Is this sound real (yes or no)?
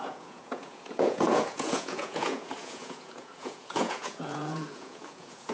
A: no